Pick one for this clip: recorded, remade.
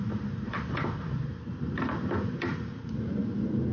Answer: remade